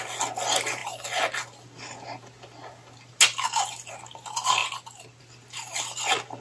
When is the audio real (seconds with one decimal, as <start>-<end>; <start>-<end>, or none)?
0.0-6.4